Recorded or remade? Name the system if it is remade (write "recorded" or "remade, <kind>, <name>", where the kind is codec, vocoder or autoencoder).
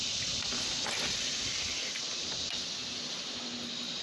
recorded